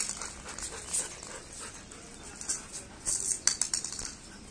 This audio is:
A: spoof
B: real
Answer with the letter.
B